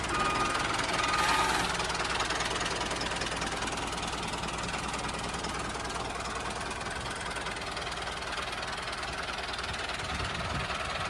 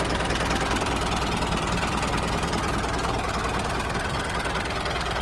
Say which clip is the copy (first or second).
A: second